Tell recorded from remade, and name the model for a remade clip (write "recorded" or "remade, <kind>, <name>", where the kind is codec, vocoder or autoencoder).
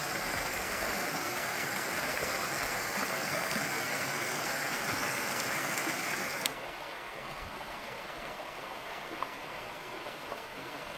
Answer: remade, codec, SNAC